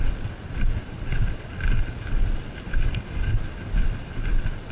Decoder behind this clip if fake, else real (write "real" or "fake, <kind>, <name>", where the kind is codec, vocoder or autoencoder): real